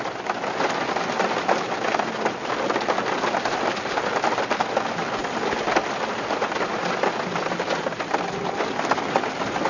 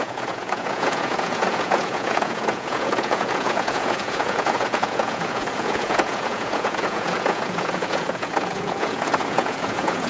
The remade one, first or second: second